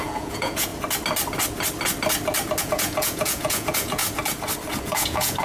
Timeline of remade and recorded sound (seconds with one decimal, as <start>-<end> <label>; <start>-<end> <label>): 0.0-0.7 remade; 0.7-2.6 recorded; 2.6-4.0 remade; 4.0-4.8 recorded; 4.8-5.4 remade